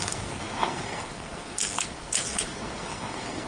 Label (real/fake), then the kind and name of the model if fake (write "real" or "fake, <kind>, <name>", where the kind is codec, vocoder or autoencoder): fake, codec, SNAC